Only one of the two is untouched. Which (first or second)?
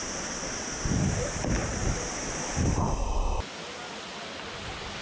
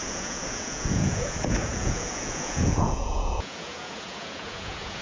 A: first